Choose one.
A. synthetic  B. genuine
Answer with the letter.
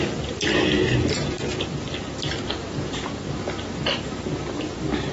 B